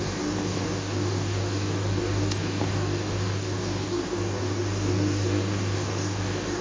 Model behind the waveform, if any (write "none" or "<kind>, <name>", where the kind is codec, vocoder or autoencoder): codec, DAC